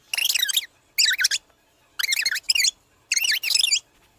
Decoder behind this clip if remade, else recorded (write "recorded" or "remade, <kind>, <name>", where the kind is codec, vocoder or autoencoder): recorded